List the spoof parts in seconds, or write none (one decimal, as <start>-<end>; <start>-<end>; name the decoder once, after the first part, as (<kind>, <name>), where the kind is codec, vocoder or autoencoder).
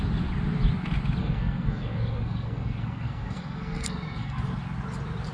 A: 1.2-4.4 (codec, SNAC)